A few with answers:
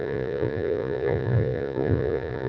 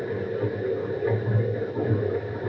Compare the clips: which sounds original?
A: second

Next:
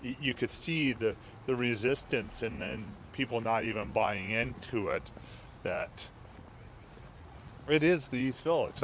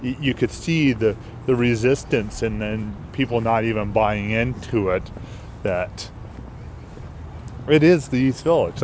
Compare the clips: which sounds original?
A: second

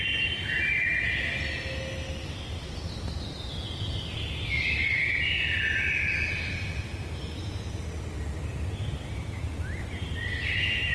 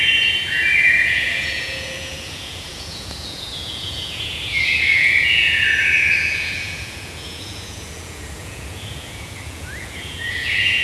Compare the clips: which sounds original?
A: first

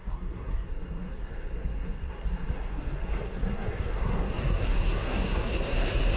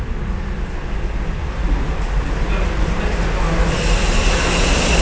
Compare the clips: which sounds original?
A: second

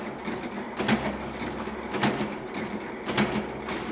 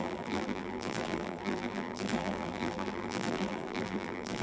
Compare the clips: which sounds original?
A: first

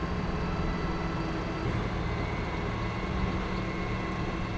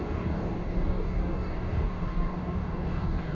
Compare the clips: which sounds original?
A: first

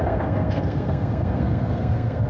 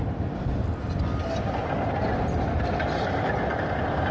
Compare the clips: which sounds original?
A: second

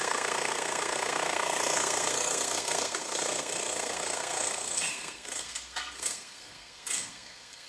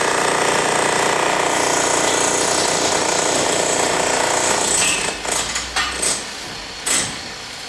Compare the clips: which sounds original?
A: second